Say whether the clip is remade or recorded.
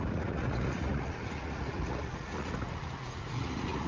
remade